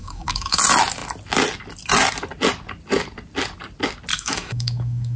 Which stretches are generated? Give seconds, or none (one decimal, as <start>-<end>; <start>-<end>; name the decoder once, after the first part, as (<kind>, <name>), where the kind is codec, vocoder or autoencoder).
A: 0.0-0.6 (autoencoder, DAC-VAE); 4.1-5.2

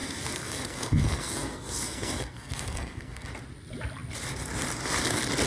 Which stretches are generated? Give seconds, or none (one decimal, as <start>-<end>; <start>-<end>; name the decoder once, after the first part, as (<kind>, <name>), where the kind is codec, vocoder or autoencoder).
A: 0.0-3.3 (codec, SNAC)

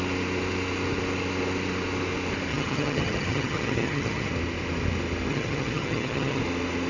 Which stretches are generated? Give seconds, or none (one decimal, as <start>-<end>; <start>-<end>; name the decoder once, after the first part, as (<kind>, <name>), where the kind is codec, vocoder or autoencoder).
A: 2.5-4.3 (vocoder, HiFi-GAN); 5.3-6.4

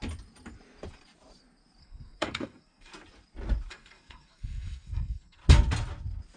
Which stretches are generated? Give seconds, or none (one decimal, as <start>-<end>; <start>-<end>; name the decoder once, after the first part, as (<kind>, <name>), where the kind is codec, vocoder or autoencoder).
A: 1.8-2.9 (codec, SNAC); 3.7-5.4

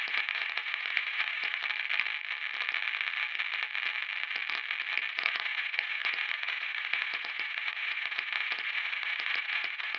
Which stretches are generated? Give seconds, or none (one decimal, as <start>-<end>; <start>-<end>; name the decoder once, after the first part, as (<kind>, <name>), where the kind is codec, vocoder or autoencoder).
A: 0.0-1.6 (vocoder, Vocos); 5.1-10.0

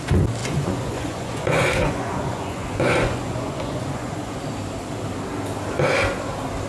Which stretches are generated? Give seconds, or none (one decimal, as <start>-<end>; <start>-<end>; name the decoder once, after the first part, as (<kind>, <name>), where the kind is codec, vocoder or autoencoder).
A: 0.4-4.4 (vocoder, Vocos)

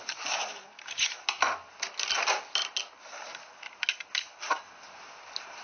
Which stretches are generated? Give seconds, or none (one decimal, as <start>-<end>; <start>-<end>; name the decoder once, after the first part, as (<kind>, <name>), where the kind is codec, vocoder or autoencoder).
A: 0.0-1.5 (vocoder, BigVGAN v2)

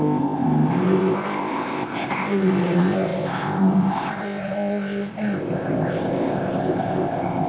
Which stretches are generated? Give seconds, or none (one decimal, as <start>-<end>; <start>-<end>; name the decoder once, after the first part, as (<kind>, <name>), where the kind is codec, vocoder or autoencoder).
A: 0.0-7.5 (codec, ZipCodec)